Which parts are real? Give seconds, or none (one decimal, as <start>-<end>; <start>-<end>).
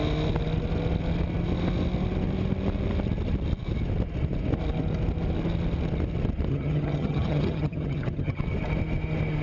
0.0-6.5; 8.4-9.4